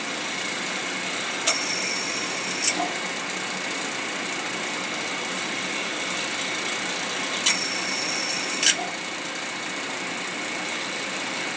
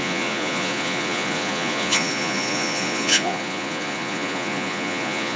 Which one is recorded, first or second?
first